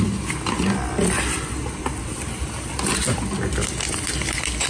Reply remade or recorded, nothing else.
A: recorded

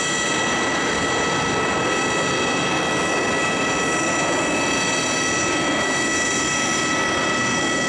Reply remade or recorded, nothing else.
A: recorded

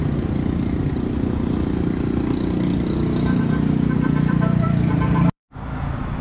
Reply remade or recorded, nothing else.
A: remade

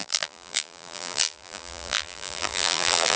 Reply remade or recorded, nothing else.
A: remade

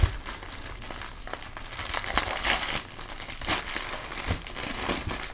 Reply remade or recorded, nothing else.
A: recorded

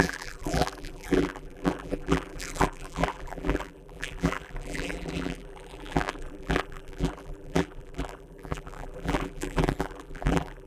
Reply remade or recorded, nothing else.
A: remade